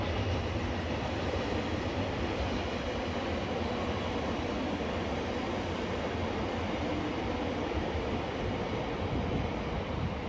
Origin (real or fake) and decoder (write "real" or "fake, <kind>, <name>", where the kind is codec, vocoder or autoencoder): real